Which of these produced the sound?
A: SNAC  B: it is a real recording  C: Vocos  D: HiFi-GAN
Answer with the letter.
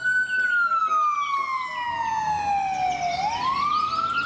B